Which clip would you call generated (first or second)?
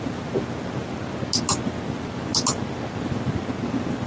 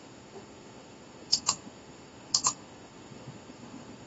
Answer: second